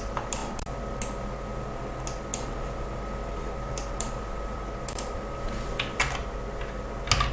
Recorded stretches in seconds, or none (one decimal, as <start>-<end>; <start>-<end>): 0.0-2.3; 6.0-7.3